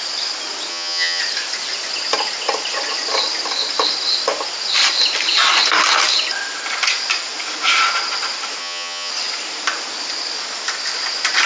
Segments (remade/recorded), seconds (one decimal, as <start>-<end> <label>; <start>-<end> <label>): 0.0-0.7 recorded; 0.7-1.2 remade; 1.2-8.6 recorded; 8.6-9.1 remade; 9.1-11.5 recorded